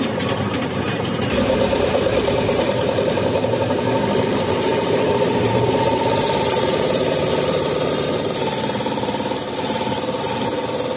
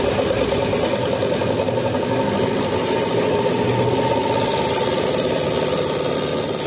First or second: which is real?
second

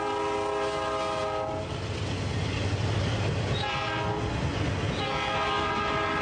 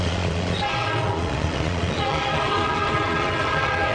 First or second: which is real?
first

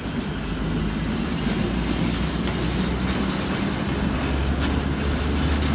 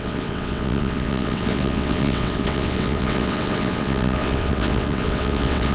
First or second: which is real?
first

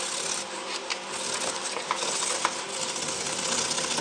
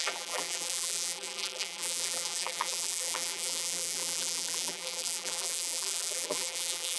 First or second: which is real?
first